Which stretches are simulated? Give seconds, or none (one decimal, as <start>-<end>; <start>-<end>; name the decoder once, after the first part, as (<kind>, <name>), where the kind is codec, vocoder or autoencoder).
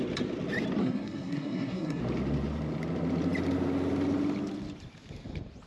0.8-2.0 (codec, SNAC)